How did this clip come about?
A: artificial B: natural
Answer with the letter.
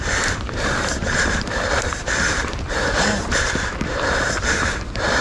A